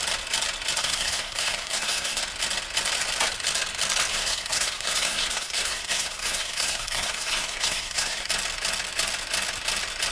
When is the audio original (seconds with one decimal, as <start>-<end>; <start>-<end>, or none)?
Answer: 0.0-0.8; 2.2-4.1; 8.3-10.1